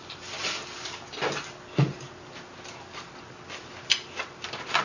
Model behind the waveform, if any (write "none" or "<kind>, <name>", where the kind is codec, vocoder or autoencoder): none